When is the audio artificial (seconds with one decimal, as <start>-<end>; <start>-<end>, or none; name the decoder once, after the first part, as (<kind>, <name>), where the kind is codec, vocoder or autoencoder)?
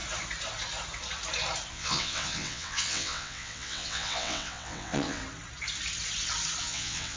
1.7-5.2 (vocoder, WaveNeXt); 6.6-7.2